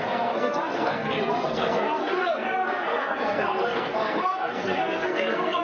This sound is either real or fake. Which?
fake